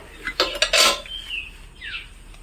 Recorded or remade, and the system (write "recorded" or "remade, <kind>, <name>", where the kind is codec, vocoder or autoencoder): recorded